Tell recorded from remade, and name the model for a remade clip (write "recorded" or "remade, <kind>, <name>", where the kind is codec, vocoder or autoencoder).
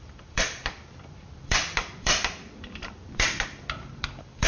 remade, vocoder, BigVGAN v2